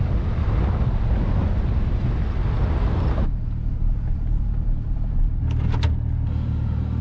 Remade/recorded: recorded